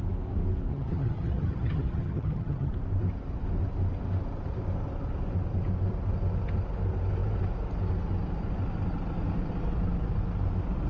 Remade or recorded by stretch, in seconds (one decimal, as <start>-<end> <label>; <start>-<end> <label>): 0.0-0.7 recorded; 0.7-2.7 remade; 2.7-10.9 recorded